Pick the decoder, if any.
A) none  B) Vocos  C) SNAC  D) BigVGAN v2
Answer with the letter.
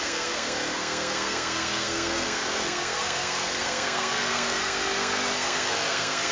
C